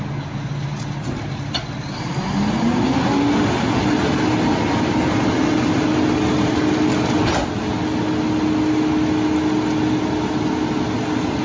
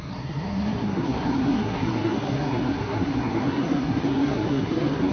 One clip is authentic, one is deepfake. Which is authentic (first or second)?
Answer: first